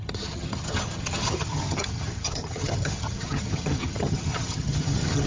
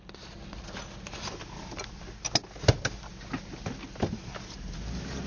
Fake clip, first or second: first